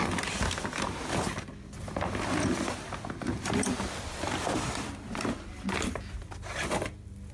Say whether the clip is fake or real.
real